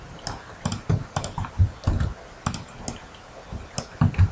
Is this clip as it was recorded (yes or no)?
yes